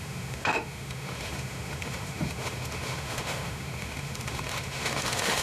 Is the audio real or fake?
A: fake